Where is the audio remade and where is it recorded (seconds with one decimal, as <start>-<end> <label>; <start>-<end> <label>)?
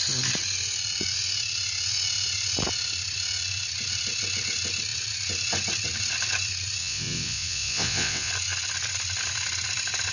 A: 0.0-6.8 recorded; 6.8-8.3 remade; 8.3-10.1 recorded